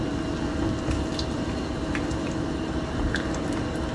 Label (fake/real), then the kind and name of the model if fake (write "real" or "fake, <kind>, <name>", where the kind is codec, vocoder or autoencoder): real